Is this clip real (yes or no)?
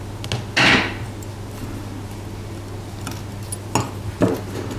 yes